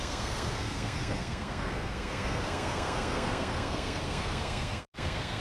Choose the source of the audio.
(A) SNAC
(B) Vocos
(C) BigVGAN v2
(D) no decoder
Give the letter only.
A